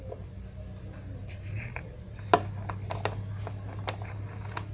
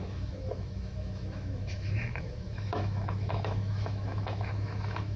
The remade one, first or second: second